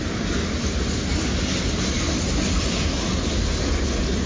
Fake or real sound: real